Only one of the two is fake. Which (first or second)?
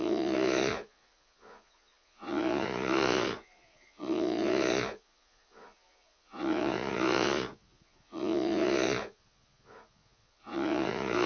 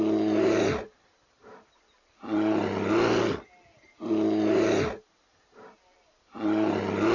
first